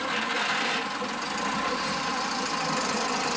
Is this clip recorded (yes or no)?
yes